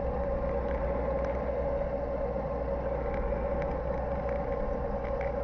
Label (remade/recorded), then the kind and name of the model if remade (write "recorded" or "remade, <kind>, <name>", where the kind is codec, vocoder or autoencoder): recorded